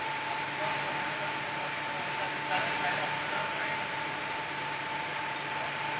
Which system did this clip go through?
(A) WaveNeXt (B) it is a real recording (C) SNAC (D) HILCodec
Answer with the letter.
B